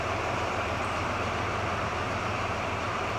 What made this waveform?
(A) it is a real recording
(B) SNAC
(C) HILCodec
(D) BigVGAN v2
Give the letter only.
D